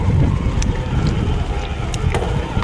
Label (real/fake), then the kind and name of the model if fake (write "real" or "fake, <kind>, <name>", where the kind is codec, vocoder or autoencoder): real